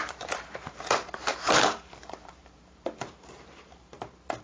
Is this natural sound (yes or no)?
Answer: no